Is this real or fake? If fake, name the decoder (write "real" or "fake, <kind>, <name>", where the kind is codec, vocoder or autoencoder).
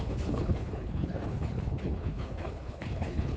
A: fake, codec, HILCodec